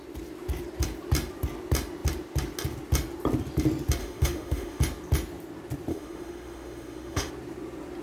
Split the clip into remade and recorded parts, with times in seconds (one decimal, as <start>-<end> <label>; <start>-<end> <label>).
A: 0.0-4.0 recorded; 4.0-4.8 remade; 4.8-5.9 recorded; 5.9-7.3 remade; 7.3-8.0 recorded